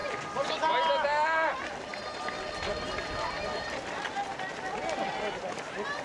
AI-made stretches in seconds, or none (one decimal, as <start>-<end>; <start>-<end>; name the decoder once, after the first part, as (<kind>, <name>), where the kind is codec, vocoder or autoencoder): none